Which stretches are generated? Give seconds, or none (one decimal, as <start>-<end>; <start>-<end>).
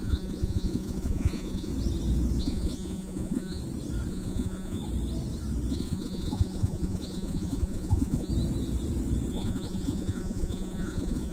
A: 0.0-1.7; 2.4-3.6; 4.1-4.8; 5.7-8.3; 9.3-11.3